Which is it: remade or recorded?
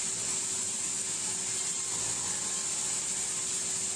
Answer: recorded